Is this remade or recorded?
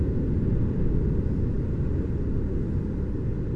recorded